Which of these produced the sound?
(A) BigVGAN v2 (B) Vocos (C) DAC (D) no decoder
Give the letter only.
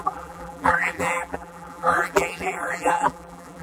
A